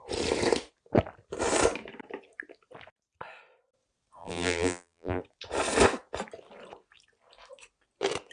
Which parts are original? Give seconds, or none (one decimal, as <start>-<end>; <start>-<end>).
0.0-4.2; 5.2-8.3